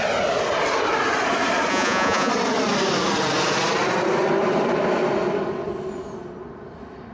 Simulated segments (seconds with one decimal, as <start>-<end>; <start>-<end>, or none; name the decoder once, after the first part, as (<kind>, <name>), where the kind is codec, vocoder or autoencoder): 1.7-2.3 (vocoder, Vocos)